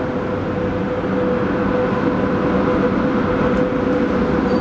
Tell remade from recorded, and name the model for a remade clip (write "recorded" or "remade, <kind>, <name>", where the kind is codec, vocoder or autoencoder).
recorded